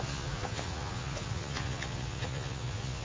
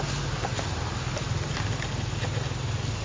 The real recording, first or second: second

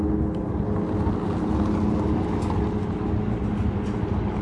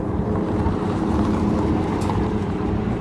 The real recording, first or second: first